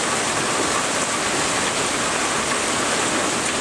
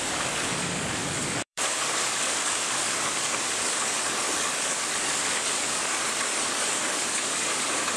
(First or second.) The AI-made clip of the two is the second